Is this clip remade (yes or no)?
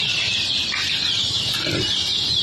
no